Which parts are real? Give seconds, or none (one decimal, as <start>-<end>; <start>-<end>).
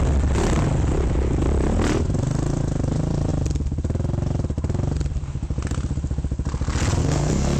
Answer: 0.0-7.0